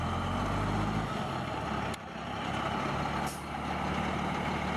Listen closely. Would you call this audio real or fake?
real